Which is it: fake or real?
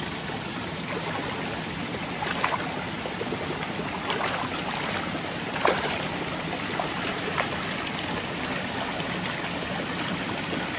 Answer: real